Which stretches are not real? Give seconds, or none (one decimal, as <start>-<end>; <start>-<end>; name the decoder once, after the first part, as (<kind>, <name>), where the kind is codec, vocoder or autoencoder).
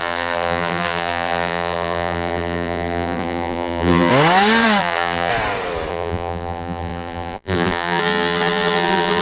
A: 0.0-4.1 (vocoder, BigVGAN v2); 4.8-5.3; 5.9-9.2